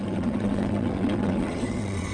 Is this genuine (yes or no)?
no